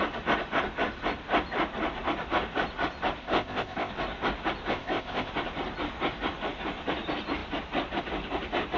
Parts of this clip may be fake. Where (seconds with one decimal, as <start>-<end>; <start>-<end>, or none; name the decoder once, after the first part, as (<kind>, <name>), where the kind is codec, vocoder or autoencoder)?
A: 3.2-3.9 (codec, ZipCodec); 4.7-5.3